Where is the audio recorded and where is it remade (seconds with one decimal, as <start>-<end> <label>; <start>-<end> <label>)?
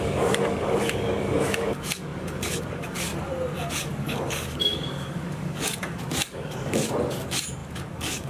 0.0-3.1 remade; 3.1-3.7 recorded; 3.7-8.3 remade